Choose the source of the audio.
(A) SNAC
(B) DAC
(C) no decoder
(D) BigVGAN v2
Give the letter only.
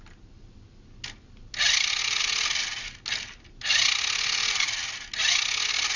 C